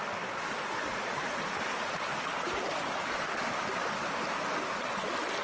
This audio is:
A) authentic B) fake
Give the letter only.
A